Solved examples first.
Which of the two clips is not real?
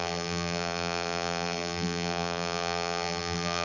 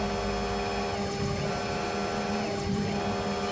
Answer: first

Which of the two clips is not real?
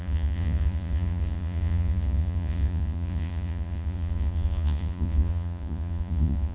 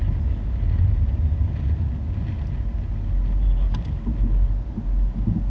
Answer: first